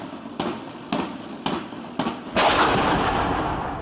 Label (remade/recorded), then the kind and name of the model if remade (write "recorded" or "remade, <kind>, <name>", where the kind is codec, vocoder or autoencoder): recorded